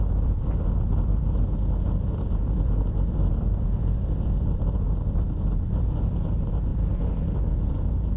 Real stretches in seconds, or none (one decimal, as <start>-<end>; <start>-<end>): 0.0-8.2